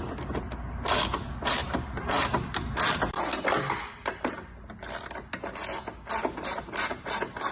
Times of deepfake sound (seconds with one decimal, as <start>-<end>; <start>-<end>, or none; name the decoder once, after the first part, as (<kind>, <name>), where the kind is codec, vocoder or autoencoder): none